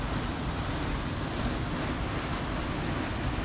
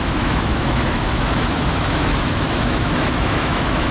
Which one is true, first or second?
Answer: first